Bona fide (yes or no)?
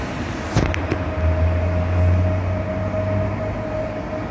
yes